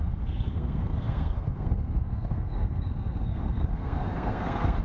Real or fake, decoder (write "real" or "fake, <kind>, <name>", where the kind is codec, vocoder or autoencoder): fake, codec, SNAC